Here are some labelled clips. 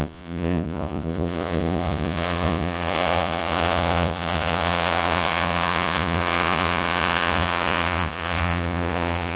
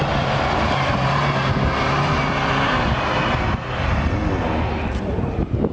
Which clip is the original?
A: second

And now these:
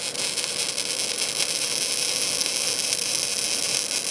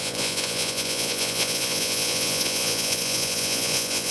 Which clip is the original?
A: first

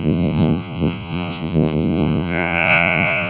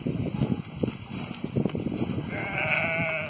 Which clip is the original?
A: second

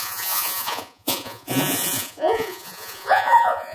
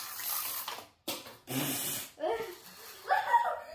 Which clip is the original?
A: second